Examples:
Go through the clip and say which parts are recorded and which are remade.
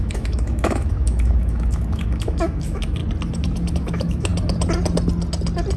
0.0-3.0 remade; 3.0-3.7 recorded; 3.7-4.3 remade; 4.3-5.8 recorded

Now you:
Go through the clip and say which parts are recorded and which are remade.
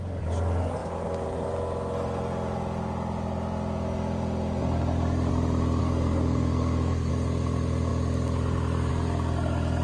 0.0-5.8 recorded; 5.8-7.1 remade; 7.1-9.8 recorded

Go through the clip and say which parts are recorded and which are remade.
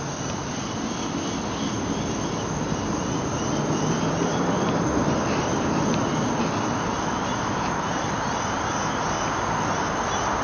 0.0-10.4 recorded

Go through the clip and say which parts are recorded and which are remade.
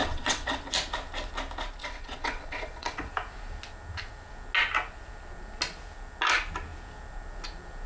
0.0-0.6 remade; 0.6-1.8 recorded; 1.8-3.1 remade; 3.1-7.9 recorded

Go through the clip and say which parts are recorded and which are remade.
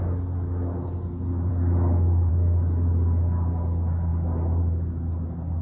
0.0-5.6 recorded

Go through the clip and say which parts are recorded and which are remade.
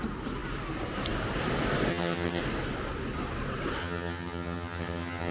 0.0-1.9 recorded; 1.9-2.4 remade; 2.4-3.8 recorded; 3.8-5.3 remade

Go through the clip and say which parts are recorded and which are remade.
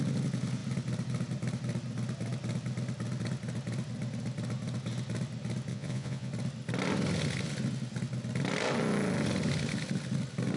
0.0-5.7 recorded; 5.7-6.3 remade; 6.3-10.6 recorded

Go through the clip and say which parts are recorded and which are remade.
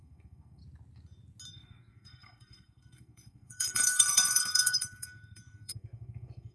0.0-0.6 remade; 0.6-1.5 recorded; 1.5-6.5 remade